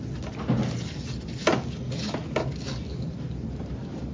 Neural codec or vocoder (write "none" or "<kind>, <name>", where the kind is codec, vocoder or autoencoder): none